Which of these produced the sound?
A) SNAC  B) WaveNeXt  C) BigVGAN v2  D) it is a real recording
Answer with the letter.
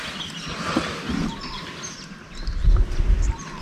D